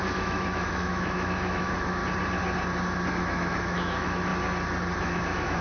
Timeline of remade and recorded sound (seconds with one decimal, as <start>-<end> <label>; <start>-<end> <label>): 0.0-2.0 remade; 2.0-3.1 recorded; 3.1-4.3 remade; 4.3-5.0 recorded; 5.0-5.6 remade